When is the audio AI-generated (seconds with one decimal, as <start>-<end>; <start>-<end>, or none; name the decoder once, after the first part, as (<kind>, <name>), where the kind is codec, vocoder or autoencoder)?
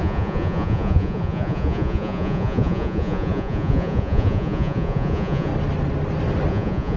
0.0-5.5 (vocoder, Vocos); 6.5-7.0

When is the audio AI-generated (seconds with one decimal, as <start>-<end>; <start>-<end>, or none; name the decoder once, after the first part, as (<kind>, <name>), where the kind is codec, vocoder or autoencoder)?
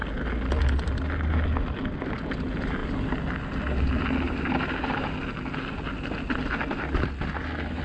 none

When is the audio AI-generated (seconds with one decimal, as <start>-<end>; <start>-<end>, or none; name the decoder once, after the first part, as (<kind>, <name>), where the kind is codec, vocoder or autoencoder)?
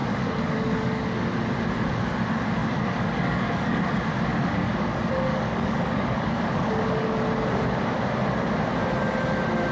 0.0-1.2 (codec, DAC); 2.6-3.8; 4.3-7.2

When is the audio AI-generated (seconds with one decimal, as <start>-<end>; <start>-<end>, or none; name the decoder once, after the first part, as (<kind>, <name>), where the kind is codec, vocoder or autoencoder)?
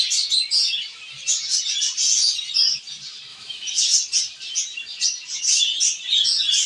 3.3-3.8 (autoencoder, DAC-VAE)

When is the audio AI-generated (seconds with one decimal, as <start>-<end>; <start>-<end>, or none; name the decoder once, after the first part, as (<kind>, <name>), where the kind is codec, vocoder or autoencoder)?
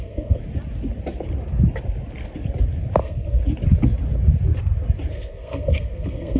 0.0-0.4 (codec, SNAC); 3.0-3.4; 5.1-6.4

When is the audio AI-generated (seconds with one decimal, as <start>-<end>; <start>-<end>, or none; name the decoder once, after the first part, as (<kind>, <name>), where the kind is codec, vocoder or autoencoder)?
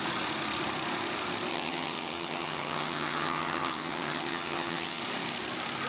1.5-5.0 (vocoder, HiFi-GAN)